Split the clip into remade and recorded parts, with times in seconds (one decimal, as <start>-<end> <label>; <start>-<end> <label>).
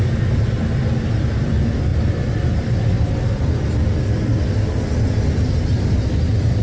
0.0-6.6 recorded